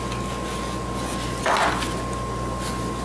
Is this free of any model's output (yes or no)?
yes